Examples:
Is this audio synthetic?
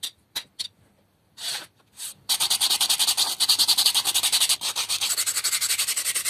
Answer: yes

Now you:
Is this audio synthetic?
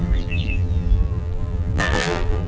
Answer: yes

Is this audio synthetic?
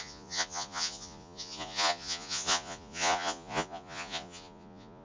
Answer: yes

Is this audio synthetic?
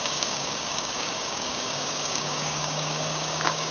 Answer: yes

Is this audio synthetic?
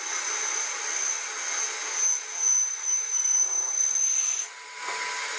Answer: no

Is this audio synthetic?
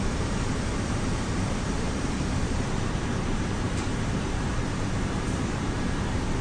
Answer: yes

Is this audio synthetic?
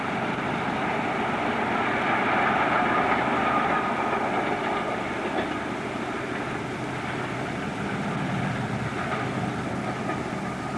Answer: no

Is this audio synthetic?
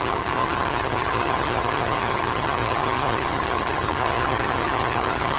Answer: yes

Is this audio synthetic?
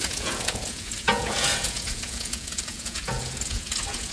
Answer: yes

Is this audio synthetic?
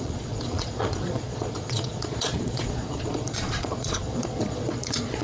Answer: yes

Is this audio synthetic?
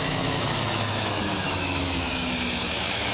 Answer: yes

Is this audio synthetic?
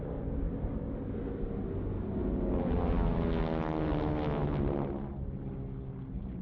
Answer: no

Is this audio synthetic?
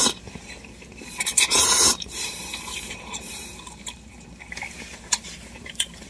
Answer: yes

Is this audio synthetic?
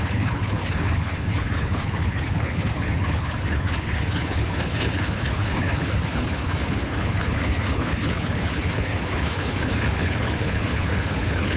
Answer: yes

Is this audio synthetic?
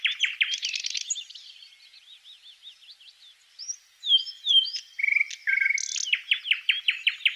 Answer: no